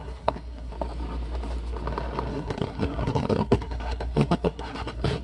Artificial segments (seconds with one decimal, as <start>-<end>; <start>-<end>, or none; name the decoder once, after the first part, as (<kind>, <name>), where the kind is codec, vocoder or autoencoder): 0.0-0.7 (codec, SNAC); 2.3-5.2